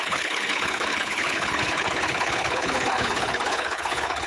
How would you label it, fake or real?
fake